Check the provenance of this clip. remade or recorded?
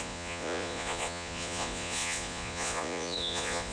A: remade